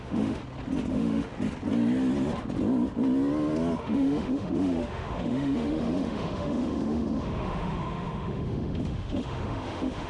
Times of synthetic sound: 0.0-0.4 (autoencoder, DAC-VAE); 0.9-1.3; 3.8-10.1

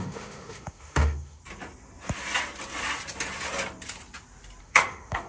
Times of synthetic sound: 0.0-1.4 (autoencoder, DAC-VAE); 4.6-5.3

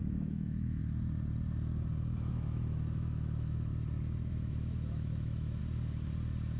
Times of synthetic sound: 0.0-0.8 (autoencoder, DAC-VAE); 2.3-3.7; 4.3-5.6

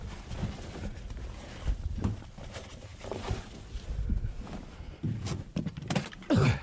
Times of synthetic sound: none